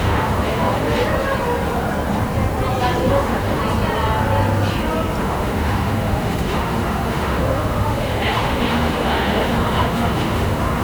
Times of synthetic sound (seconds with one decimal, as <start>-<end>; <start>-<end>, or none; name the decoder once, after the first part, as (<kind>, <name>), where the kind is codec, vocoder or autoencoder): 0.0-1.0 (autoencoder, DAC-VAE); 3.1-3.6; 5.2-10.8